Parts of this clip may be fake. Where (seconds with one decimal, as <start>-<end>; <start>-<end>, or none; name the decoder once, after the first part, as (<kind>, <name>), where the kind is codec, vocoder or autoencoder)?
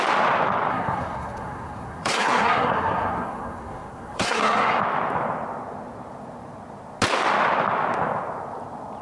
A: 0.7-4.8 (codec, SNAC)